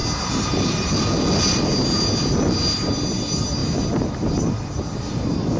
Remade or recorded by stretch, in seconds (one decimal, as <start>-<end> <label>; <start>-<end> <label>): 0.0-5.6 recorded